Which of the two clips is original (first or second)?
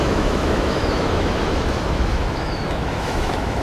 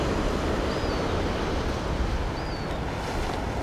second